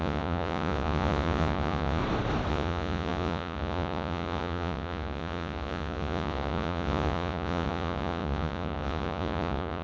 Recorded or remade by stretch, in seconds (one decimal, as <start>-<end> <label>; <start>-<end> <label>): 0.0-2.0 remade; 2.0-2.5 recorded; 2.5-9.8 remade